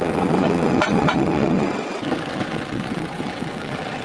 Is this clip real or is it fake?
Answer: fake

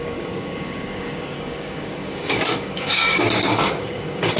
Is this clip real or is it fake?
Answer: fake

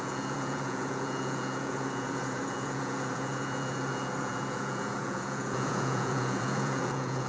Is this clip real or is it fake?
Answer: fake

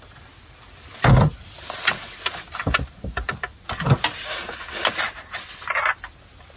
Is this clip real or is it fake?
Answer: real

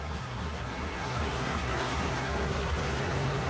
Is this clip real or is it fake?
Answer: fake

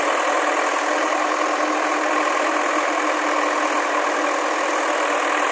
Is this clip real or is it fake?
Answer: real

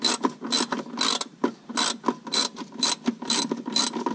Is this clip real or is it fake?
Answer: real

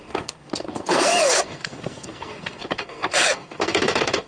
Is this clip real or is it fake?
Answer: fake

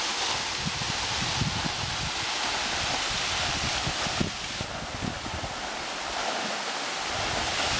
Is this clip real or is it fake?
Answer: real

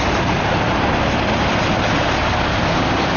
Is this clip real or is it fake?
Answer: real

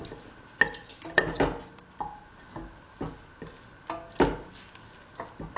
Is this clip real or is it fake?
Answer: real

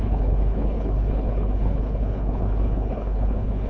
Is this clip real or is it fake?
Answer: fake